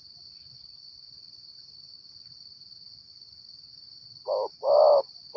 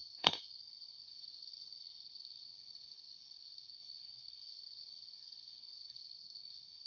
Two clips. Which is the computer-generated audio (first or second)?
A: second